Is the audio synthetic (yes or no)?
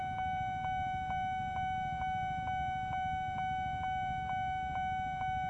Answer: no